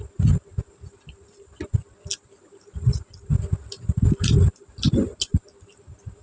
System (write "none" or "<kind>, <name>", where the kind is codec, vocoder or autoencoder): none